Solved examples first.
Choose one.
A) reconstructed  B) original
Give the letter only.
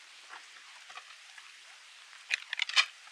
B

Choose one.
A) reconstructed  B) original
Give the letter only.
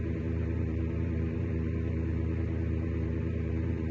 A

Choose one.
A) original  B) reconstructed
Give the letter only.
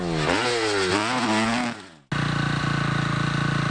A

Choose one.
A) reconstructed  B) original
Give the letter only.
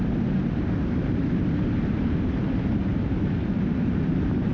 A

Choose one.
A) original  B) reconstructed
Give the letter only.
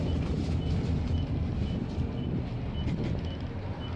A